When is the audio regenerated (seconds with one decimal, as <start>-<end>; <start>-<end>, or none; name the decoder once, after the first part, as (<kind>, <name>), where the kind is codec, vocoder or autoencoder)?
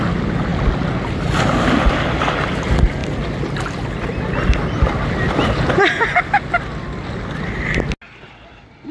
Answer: none